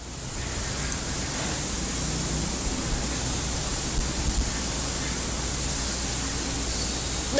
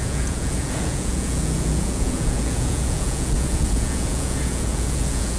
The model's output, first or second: second